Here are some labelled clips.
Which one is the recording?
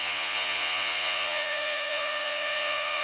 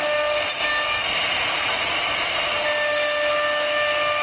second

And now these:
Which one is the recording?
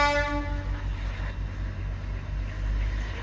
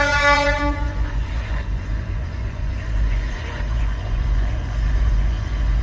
first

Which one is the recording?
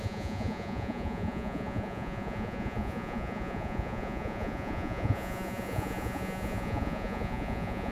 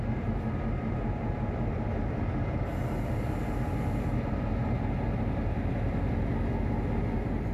second